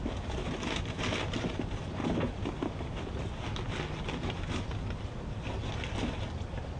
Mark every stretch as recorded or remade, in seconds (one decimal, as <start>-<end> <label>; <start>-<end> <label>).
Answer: 0.0-6.8 recorded